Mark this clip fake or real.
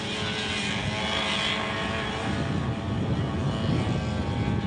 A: real